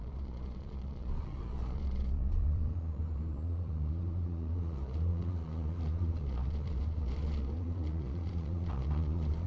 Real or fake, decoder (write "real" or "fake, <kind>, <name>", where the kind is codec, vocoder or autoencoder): fake, vocoder, Vocos